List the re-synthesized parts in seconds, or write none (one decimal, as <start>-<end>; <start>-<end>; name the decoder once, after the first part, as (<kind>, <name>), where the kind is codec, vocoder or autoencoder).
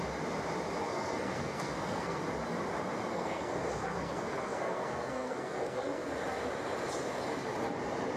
0.8-2.2 (codec, SNAC); 3.1-6.1